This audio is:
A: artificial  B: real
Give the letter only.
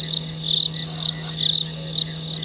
B